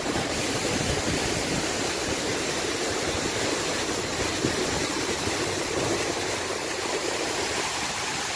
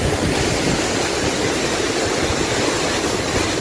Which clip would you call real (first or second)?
second